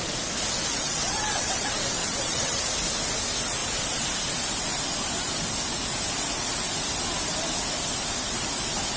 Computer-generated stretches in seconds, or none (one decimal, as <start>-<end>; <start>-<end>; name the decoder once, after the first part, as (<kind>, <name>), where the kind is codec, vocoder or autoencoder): 0.7-1.6 (vocoder, WaveNeXt); 2.0-2.6